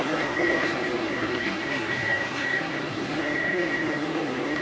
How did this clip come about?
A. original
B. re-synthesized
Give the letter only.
B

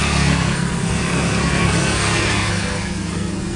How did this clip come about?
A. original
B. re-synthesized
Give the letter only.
B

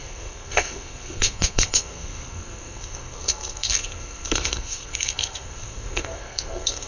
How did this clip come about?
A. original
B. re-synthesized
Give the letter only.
B